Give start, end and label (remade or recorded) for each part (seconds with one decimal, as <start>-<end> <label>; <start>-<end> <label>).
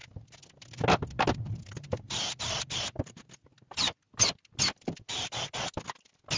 0.0-6.4 recorded